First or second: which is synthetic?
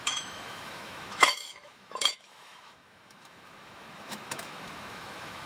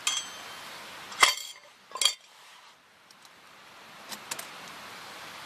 first